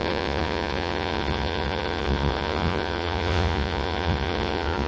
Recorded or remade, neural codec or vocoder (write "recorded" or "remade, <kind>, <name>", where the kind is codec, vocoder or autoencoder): remade, vocoder, Vocos